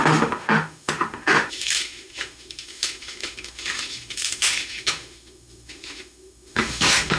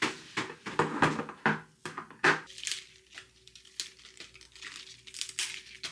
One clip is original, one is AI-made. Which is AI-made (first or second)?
first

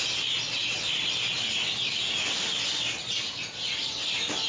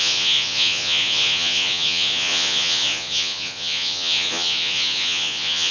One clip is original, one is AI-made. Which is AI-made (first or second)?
second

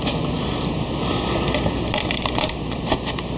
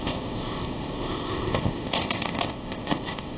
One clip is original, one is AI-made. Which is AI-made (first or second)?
second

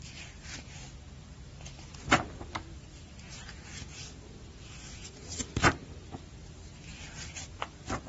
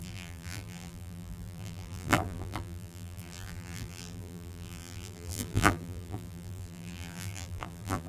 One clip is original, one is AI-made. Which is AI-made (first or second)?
second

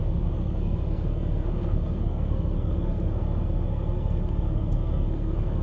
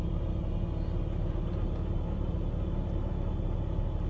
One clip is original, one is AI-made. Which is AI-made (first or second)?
first